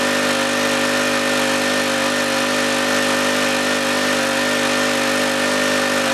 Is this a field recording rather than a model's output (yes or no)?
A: yes